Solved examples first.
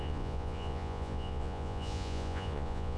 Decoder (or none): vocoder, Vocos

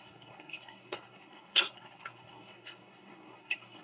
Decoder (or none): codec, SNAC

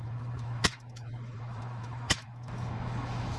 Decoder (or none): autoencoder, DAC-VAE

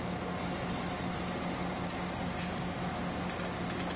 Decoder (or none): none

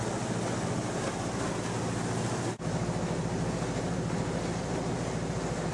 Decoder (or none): none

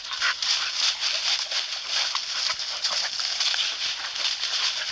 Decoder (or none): none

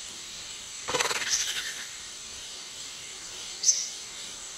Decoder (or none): codec, DAC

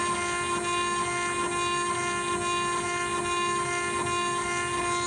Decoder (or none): none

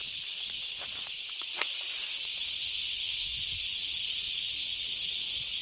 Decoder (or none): vocoder, WaveNeXt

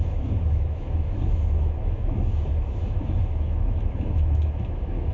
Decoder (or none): autoencoder, DAC-VAE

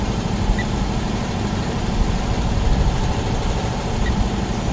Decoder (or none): vocoder, BigVGAN v2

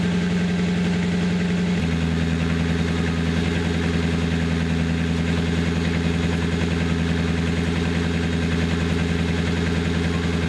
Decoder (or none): none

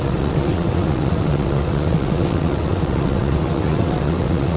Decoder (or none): vocoder, WaveNeXt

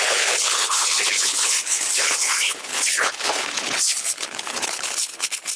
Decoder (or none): codec, HILCodec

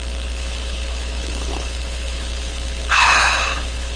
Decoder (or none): codec, HILCodec